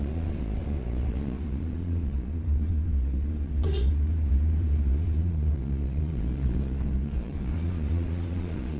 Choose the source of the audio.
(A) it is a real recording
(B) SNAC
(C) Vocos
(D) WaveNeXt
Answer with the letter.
C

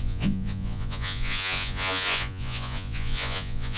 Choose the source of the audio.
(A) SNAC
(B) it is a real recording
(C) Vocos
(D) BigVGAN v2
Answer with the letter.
C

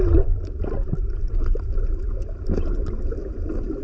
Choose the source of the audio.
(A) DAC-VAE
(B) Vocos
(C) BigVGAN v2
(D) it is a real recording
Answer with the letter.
D